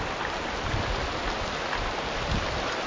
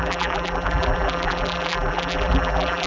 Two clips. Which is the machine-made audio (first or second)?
second